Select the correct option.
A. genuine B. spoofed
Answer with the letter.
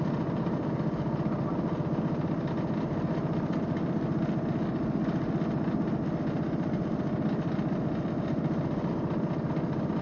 A